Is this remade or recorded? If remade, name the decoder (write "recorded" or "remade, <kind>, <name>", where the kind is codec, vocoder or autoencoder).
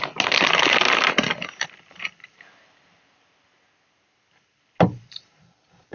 recorded